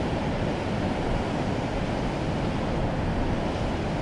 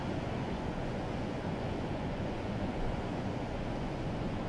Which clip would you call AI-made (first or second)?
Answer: second